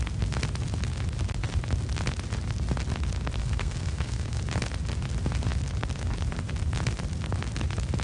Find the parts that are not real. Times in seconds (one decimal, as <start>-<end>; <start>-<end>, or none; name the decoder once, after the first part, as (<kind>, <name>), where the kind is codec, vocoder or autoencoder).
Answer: 3.4-4.4 (codec, SNAC)